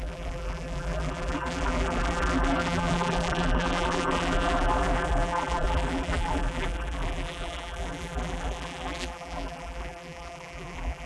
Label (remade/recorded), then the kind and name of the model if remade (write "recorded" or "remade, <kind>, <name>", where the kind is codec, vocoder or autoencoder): remade, vocoder, BigVGAN v2